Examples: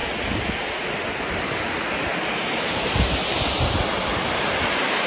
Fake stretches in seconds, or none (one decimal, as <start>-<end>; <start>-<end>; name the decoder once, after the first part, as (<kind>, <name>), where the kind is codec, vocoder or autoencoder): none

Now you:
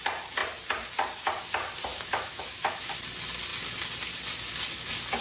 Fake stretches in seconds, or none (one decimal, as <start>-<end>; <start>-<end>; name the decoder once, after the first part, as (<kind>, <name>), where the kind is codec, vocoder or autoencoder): 1.9-2.9 (autoencoder, DAC-VAE)

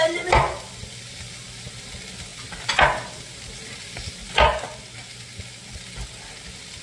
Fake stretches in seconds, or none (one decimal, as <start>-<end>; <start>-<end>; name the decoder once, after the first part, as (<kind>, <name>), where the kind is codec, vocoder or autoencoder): none